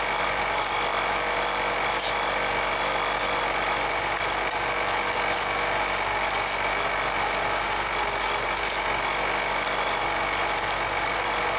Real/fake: real